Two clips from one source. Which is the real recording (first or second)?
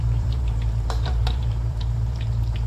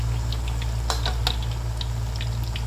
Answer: second